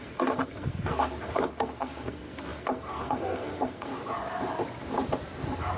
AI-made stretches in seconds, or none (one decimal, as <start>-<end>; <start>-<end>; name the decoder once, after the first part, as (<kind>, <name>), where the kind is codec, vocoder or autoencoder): 0.0-3.9 (codec, SNAC)